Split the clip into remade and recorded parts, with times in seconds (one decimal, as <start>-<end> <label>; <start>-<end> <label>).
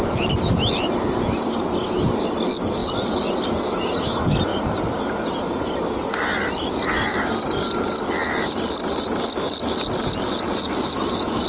0.0-11.5 recorded